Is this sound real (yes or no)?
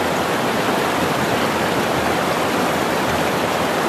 no